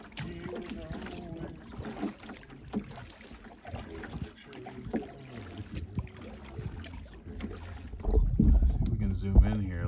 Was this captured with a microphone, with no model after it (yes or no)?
yes